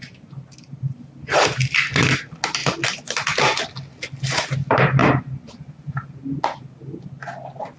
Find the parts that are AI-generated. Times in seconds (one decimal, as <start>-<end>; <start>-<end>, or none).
none